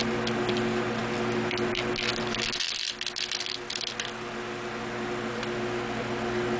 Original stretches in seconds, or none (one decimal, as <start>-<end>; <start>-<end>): 0.0-6.6